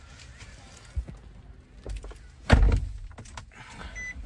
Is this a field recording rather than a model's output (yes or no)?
yes